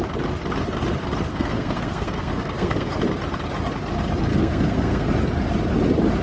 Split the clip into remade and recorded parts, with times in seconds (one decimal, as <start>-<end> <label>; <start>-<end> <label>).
0.0-1.3 recorded; 1.3-3.0 remade; 3.0-4.3 recorded; 4.3-5.1 remade; 5.1-6.2 recorded